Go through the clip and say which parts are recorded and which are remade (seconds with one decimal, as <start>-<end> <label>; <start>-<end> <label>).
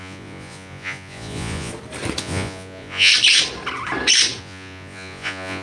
0.0-1.7 remade; 1.7-2.2 recorded; 2.2-3.1 remade; 3.1-4.4 recorded; 4.4-5.6 remade